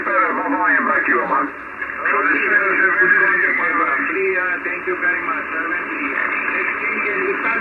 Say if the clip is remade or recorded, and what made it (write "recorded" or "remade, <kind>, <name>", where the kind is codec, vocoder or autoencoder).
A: recorded